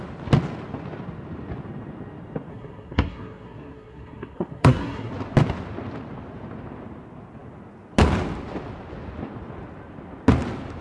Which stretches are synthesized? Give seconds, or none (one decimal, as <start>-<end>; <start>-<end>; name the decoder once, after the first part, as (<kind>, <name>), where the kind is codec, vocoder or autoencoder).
2.5-5.1 (codec, SNAC)